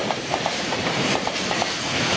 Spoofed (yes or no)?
yes